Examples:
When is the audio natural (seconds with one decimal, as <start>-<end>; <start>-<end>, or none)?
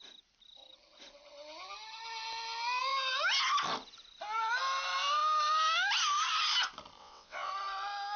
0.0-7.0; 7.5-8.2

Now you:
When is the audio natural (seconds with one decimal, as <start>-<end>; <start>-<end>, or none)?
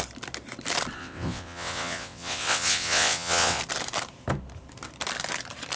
0.0-1.0; 3.6-5.8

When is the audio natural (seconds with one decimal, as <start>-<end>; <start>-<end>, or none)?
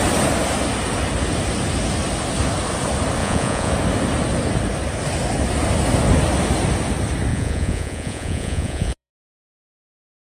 0.0-3.2; 3.7-7.3; 9.1-10.4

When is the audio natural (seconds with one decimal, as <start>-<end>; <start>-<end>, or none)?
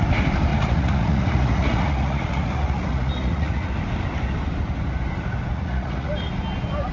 0.0-0.5; 3.7-5.5; 6.1-6.9